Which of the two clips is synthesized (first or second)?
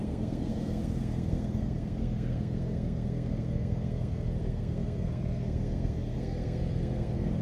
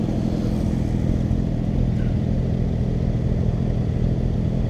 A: first